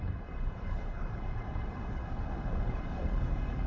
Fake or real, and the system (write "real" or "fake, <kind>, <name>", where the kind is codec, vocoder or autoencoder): fake, codec, HILCodec